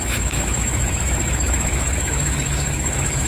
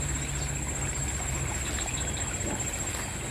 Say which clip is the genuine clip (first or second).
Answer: second